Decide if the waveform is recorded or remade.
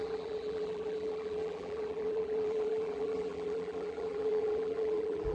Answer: remade